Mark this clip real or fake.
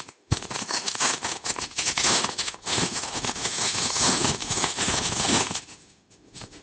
fake